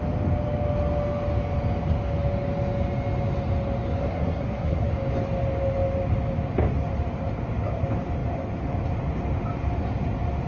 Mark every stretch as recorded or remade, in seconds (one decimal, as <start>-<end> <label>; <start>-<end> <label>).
0.0-4.0 recorded; 4.0-4.9 remade; 4.9-10.5 recorded